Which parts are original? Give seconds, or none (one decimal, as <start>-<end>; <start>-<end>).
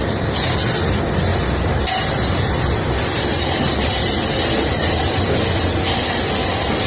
0.0-3.3; 5.4-6.9